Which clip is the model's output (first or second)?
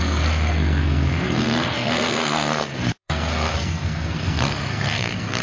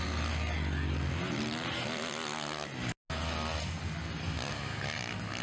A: first